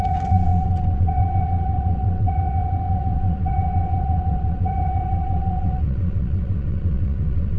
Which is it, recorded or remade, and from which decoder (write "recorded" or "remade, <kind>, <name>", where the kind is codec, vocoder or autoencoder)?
remade, vocoder, WaveNeXt